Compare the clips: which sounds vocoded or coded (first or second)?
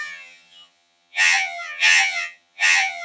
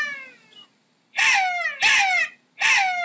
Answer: first